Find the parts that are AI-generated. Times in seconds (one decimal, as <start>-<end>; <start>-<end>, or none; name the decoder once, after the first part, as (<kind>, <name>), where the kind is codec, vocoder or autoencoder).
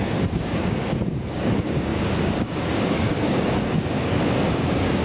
0.0-5.0 (codec, DAC)